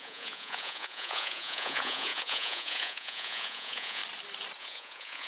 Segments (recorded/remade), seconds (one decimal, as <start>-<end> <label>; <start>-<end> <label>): 0.0-4.0 remade; 4.0-4.6 recorded; 4.6-5.3 remade